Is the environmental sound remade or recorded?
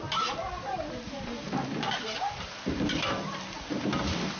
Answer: remade